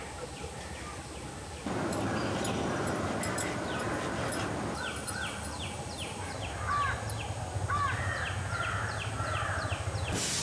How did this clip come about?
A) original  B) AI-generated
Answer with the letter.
A